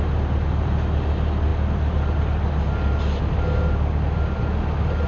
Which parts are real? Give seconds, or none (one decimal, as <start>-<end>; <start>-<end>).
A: 0.0-5.1